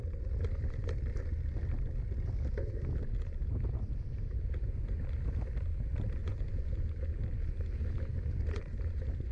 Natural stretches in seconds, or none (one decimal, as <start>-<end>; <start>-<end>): 0.0-6.2; 6.7-9.3